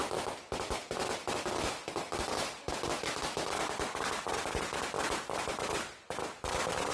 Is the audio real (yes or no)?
yes